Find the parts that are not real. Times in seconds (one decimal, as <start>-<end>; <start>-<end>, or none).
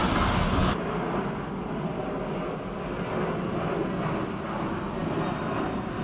none